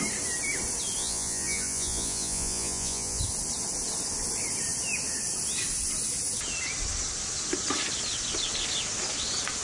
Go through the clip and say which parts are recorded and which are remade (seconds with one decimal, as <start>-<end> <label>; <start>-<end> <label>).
0.0-1.0 recorded; 1.0-3.2 remade; 3.2-9.6 recorded